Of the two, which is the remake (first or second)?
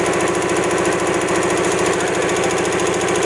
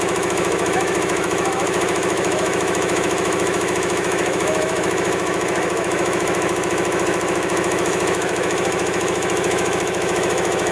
second